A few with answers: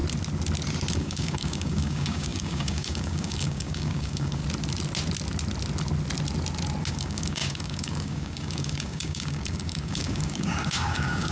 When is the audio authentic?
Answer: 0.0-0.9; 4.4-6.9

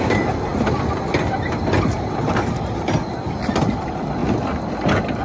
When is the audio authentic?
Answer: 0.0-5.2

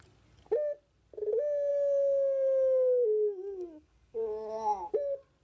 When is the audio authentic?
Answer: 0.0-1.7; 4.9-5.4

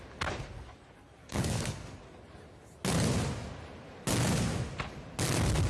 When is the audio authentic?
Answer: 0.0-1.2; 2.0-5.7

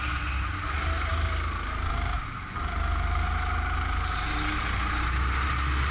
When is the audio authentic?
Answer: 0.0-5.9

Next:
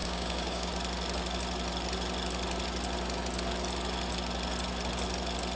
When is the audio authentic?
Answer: 0.7-5.6